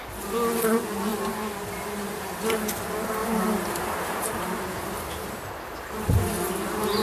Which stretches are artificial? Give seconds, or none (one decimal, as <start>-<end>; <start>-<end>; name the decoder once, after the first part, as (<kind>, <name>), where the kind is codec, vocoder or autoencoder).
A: 3.2-6.2 (vocoder, BigVGAN v2)